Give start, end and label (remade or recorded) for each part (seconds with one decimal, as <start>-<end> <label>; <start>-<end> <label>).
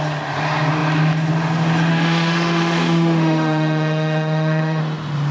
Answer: 0.0-1.9 recorded; 1.9-4.8 remade; 4.8-5.3 recorded